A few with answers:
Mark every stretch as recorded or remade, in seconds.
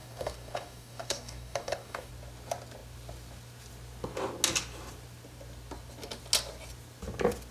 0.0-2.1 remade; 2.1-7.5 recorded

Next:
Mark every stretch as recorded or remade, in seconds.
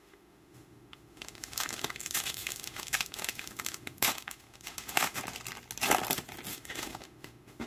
0.0-5.2 remade; 5.2-6.5 recorded; 6.5-7.7 remade